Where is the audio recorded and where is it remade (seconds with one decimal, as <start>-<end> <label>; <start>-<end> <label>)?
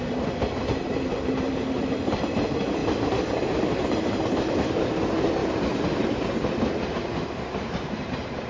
0.0-8.5 remade